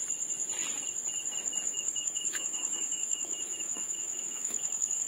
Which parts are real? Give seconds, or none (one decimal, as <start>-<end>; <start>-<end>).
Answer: 0.0-1.7